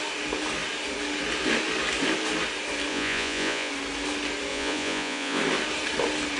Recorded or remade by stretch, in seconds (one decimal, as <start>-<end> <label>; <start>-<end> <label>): 0.0-2.9 recorded; 2.9-3.7 remade; 3.7-4.5 recorded; 4.5-5.4 remade; 5.4-6.4 recorded